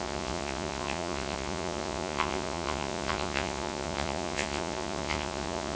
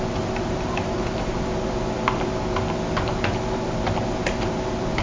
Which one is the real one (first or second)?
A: second